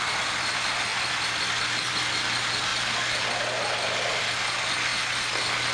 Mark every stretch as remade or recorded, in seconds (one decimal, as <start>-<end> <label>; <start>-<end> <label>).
0.0-5.7 recorded